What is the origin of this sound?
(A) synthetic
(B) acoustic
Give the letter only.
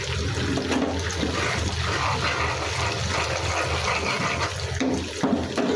B